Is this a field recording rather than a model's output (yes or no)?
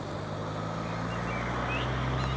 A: yes